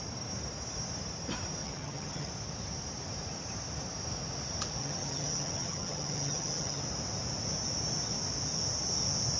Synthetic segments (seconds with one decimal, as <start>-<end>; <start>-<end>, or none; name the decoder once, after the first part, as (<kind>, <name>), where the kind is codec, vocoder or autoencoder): 1.6-2.3 (vocoder, HiFi-GAN); 4.8-6.8